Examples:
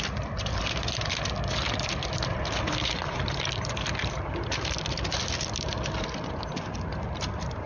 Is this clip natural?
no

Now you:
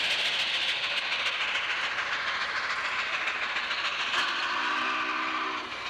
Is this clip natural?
yes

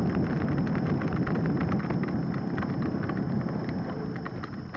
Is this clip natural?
yes